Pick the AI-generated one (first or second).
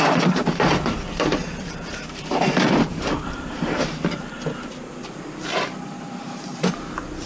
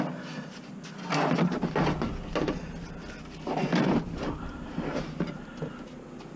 first